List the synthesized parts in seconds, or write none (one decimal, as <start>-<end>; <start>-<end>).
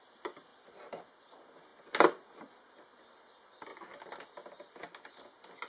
none